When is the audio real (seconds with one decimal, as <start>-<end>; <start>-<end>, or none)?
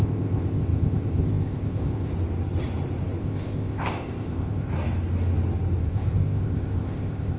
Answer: 2.1-3.2; 4.7-5.8